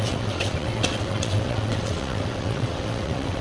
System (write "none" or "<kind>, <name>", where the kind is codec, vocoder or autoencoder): vocoder, WaveNeXt